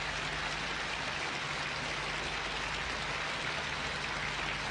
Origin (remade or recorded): recorded